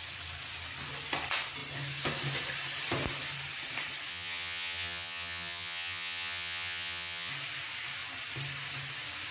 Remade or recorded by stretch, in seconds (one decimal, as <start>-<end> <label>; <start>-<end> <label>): 0.0-4.1 recorded; 4.1-7.3 remade; 7.3-9.3 recorded

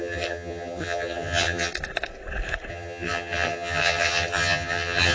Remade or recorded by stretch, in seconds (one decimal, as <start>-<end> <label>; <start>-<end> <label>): 0.0-1.7 remade; 1.7-2.7 recorded; 2.7-5.1 remade